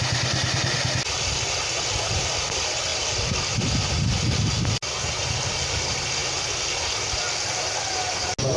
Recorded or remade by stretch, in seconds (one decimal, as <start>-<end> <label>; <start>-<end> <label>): 0.0-8.6 recorded